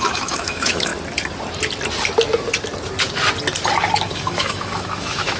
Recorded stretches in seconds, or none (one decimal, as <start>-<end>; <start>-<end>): 0.9-4.1